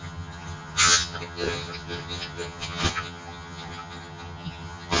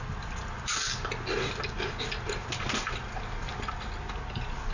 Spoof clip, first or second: first